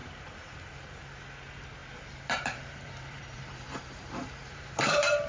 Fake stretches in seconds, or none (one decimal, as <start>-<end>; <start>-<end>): 1.8-5.3